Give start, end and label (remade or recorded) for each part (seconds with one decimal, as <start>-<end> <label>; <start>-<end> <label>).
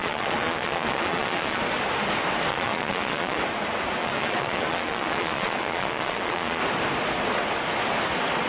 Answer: 0.0-1.6 remade; 1.6-2.5 recorded; 2.5-3.4 remade; 3.4-4.0 recorded; 4.0-6.6 remade; 6.6-8.5 recorded